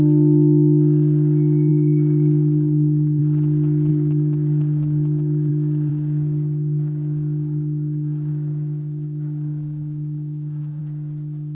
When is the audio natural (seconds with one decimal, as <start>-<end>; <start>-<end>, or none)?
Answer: 0.0-1.7; 3.2-3.9; 5.5-5.9; 10.8-11.5